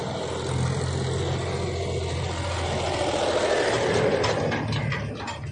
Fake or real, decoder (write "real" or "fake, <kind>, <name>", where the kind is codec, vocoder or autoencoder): real